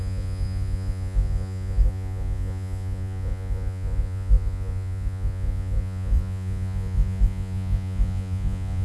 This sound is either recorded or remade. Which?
remade